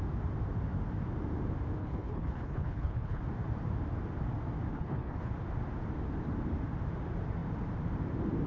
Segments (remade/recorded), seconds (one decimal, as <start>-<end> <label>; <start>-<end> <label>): 0.0-1.8 recorded; 1.8-3.2 remade; 3.2-4.7 recorded; 4.7-5.3 remade; 5.3-8.5 recorded